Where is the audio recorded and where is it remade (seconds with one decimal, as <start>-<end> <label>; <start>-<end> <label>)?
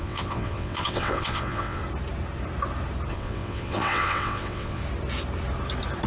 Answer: 0.0-1.8 remade; 1.8-3.1 recorded; 3.1-4.8 remade; 4.8-6.1 recorded